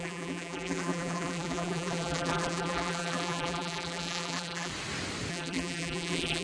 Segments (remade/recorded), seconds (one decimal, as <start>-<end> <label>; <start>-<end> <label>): 0.0-4.7 remade; 4.7-5.3 recorded; 5.3-6.4 remade